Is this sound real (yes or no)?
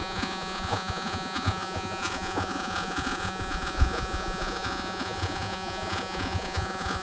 no